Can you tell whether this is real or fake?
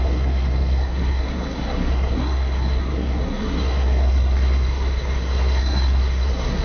fake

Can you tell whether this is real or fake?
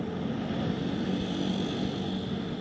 real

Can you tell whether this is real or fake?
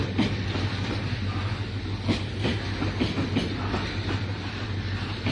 real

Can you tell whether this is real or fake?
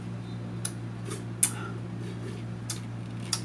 real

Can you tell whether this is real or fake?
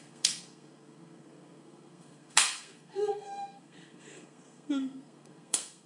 fake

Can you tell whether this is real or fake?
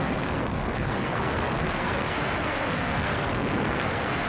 fake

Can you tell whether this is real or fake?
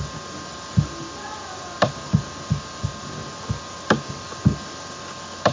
real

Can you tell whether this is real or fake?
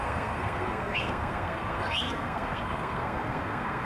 fake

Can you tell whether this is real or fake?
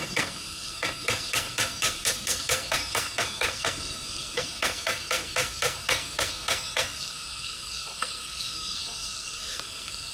fake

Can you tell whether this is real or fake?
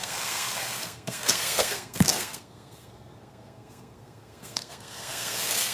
fake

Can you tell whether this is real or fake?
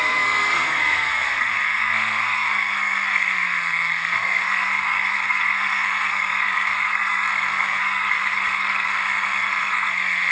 fake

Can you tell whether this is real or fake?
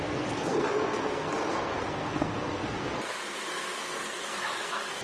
fake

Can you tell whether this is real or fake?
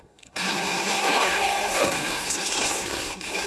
fake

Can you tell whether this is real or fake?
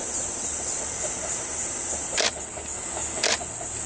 real